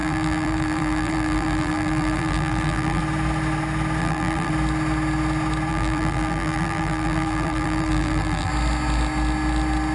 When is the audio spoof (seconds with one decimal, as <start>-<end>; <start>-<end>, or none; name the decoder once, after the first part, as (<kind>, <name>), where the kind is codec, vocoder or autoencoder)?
0.0-3.0 (vocoder, BigVGAN v2); 4.0-4.5; 5.7-8.5